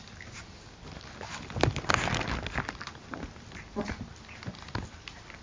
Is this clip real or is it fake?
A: real